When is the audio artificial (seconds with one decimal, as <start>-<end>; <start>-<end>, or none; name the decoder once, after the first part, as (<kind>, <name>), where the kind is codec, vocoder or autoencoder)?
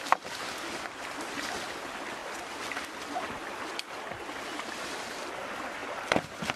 none